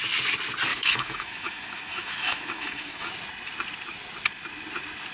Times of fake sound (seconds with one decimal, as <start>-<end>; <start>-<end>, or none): 0.7-3.1